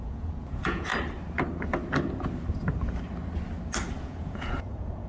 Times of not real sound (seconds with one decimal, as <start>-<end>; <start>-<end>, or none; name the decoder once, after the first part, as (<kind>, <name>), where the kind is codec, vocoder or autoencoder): 0.0-0.9 (vocoder, Vocos); 4.0-5.1